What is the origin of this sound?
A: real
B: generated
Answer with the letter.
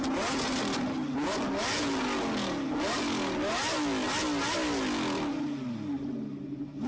A